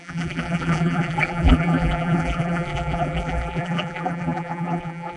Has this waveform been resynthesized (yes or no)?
yes